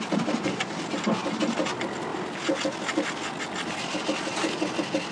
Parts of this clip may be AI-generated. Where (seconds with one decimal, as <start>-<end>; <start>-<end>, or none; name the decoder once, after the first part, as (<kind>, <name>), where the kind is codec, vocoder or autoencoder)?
none